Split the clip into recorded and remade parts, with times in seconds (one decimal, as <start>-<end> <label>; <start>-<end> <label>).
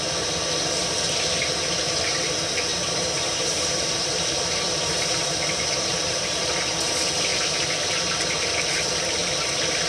0.0-2.7 recorded; 2.7-6.5 remade; 6.5-9.9 recorded